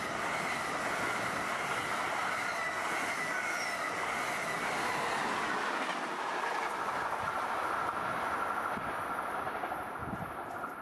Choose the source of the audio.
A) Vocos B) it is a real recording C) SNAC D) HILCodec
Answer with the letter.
B